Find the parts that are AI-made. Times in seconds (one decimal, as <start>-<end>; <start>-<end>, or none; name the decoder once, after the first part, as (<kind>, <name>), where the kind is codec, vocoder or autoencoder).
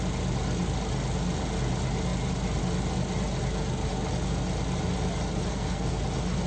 5.5-6.0 (codec, SNAC)